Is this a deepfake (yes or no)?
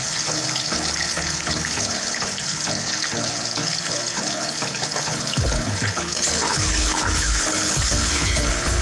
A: yes